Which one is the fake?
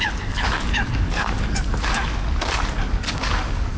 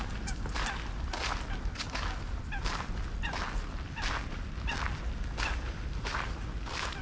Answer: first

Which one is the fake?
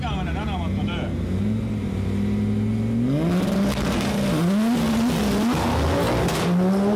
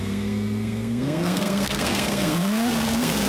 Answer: second